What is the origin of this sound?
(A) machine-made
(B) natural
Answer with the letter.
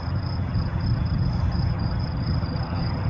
A